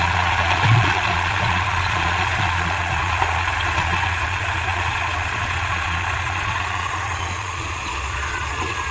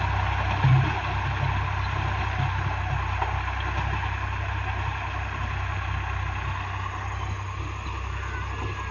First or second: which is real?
second